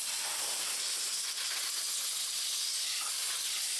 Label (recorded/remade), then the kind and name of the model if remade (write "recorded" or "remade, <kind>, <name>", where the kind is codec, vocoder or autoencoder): recorded